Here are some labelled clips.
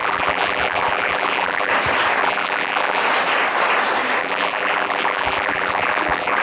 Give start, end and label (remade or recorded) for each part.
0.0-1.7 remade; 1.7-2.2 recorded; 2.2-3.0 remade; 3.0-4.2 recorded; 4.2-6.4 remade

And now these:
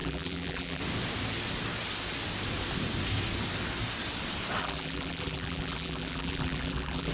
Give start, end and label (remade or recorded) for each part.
0.0-0.8 remade; 0.8-4.6 recorded; 4.6-7.1 remade

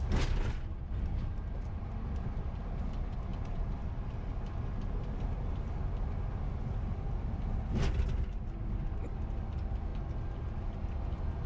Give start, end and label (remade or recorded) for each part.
0.0-3.3 recorded; 3.3-4.3 remade; 4.3-11.5 recorded

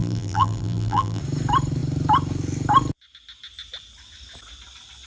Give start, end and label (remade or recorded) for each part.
0.0-1.2 remade; 1.2-5.1 recorded

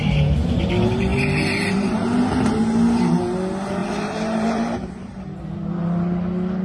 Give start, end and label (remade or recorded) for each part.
0.0-3.8 recorded; 3.8-5.1 remade; 5.1-6.6 recorded

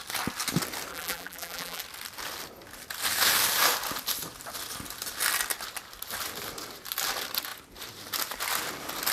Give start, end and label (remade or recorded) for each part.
0.0-0.9 recorded; 0.9-1.8 remade; 1.8-9.1 recorded

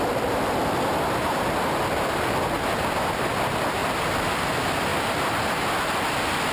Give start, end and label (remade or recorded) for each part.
0.0-3.8 recorded; 3.8-4.4 remade; 4.4-4.9 recorded; 4.9-5.4 remade; 5.4-6.5 recorded

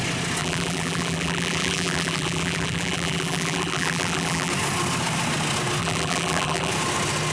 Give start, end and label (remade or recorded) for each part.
0.0-0.4 recorded; 0.4-4.5 remade; 4.5-5.8 recorded; 5.8-6.7 remade; 6.7-7.3 recorded